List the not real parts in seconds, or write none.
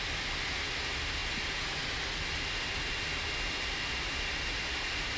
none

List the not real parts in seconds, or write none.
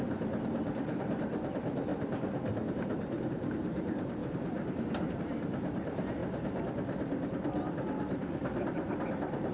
0.0-1.9 (vocoder, BigVGAN v2); 3.3-4.2; 5.1-6.2